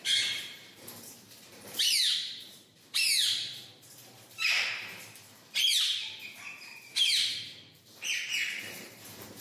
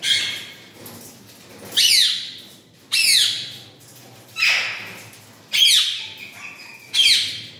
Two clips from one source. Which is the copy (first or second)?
first